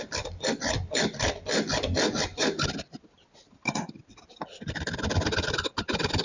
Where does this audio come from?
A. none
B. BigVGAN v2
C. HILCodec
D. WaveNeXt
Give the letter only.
A